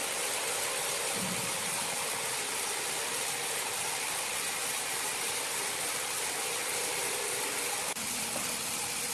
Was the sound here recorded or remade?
recorded